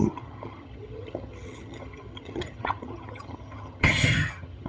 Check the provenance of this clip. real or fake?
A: fake